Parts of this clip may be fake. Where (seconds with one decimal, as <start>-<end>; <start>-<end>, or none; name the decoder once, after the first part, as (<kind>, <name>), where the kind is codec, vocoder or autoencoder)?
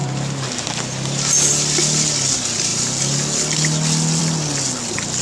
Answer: none